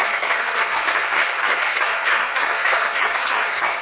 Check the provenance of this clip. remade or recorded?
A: remade